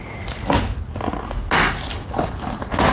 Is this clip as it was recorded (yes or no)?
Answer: yes